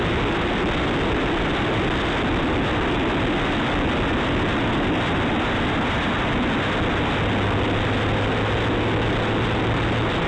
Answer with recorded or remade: recorded